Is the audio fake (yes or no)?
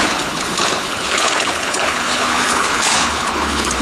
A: yes